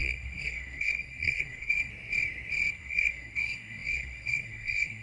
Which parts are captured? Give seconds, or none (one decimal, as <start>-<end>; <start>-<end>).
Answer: 1.9-2.7

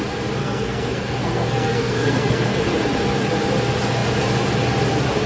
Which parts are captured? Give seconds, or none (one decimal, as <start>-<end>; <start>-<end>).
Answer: 0.0-0.4; 2.6-5.3

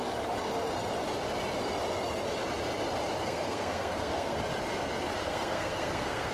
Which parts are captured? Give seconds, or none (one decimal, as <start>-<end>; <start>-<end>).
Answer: 0.0-3.2; 4.4-5.2

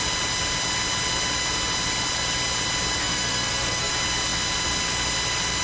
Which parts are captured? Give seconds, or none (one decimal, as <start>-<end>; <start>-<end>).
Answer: 0.0-3.0; 3.9-5.6

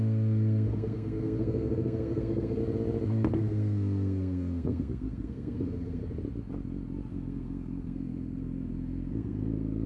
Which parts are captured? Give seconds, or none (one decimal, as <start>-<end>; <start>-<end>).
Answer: 2.6-3.3; 6.0-7.1

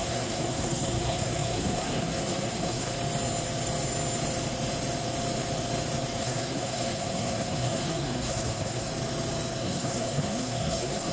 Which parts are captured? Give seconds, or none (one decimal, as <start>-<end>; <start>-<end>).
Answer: 2.9-6.2; 8.9-9.6

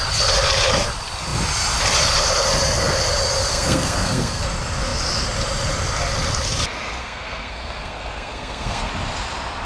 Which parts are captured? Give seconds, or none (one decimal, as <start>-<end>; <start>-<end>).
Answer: 0.0-3.5; 4.4-7.0; 8.9-9.7